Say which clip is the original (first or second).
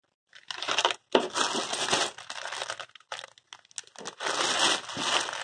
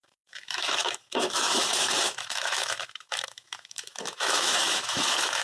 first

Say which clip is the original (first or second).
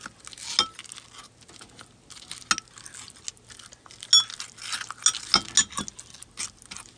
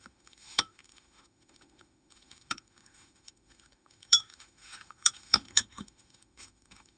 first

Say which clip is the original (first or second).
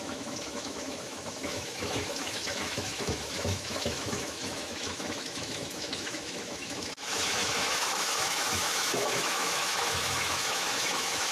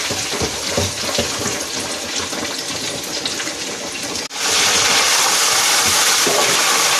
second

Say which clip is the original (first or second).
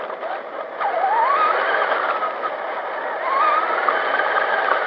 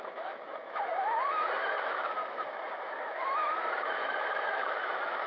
first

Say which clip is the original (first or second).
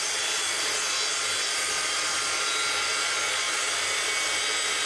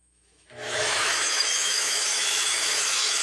first